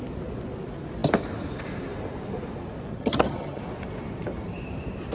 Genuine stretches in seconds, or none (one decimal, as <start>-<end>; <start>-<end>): 0.0-2.9; 3.6-5.1